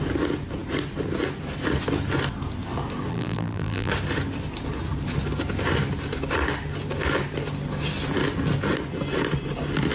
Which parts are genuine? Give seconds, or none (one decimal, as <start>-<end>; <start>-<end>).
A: 0.0-3.1; 3.9-9.9